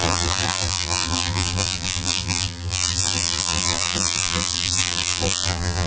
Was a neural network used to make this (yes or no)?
yes